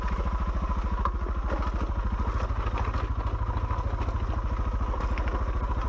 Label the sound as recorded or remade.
recorded